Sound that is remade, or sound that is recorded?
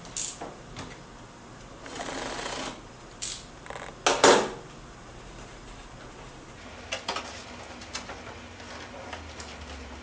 recorded